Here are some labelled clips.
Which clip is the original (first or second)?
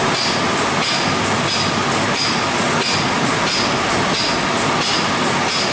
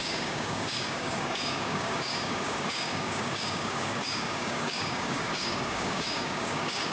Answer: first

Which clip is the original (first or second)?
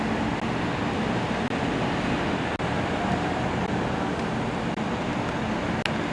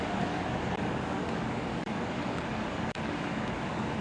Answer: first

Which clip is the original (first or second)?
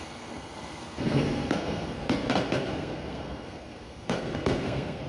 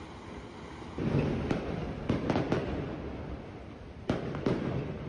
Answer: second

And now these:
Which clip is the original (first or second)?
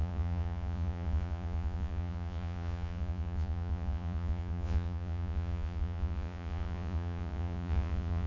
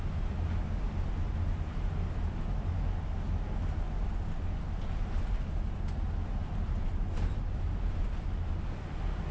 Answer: second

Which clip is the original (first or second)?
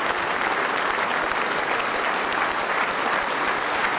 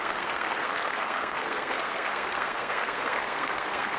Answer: first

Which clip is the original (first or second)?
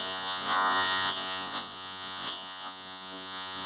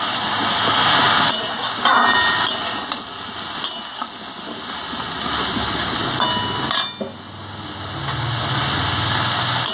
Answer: second